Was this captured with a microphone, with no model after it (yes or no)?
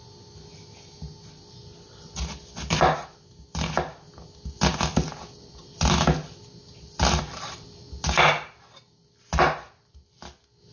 yes